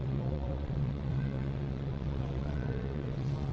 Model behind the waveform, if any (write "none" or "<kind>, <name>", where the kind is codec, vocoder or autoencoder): vocoder, WaveNeXt